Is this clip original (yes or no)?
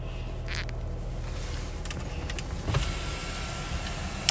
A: yes